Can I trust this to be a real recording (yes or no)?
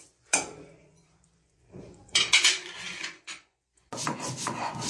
no